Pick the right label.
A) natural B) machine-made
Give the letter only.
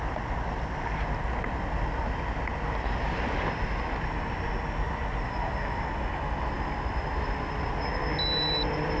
A